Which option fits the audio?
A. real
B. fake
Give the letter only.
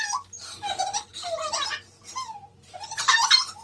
B